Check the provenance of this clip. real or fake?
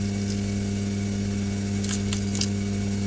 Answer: real